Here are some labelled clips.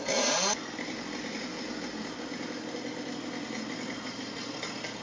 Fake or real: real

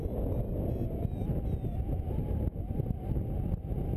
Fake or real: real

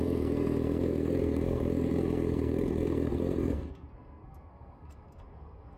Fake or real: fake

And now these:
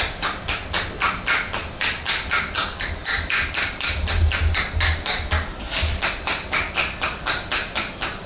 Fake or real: real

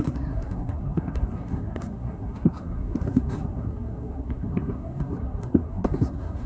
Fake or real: fake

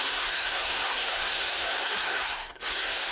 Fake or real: fake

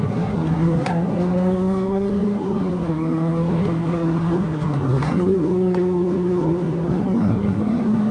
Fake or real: fake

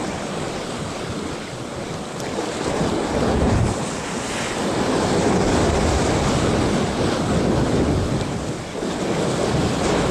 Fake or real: real